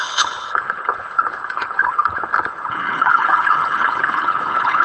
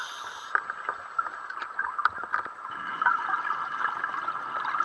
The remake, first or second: first